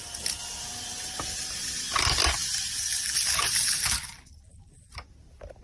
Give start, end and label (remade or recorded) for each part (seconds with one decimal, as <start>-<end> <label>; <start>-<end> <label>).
0.0-5.6 recorded